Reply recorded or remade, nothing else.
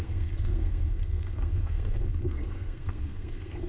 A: remade